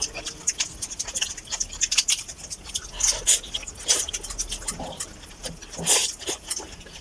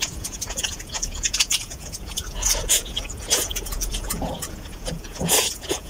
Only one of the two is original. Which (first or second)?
first